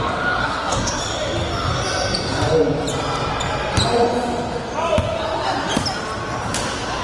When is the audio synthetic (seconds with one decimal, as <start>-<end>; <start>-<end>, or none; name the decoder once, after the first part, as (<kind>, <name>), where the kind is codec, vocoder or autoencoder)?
0.4-1.0 (codec, SNAC)